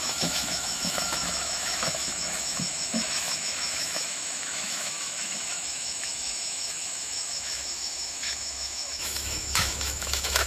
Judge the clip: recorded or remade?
remade